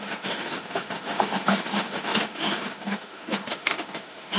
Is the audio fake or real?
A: fake